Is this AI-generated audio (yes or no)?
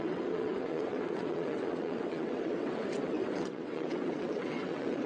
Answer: yes